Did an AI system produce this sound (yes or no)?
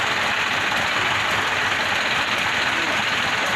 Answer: no